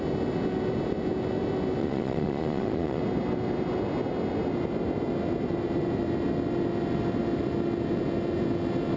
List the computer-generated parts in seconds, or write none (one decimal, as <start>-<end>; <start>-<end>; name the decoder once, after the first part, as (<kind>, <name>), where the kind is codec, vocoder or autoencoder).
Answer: 1.8-3.0 (vocoder, Vocos)